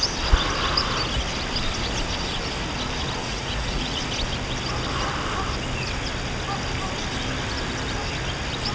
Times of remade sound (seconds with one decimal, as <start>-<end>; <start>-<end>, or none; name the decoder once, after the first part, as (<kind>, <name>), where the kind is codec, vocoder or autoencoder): 3.2-4.0 (vocoder, Vocos)